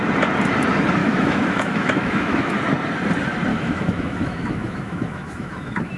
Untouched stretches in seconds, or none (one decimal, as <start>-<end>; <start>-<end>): 0.0-1.0; 2.6-3.5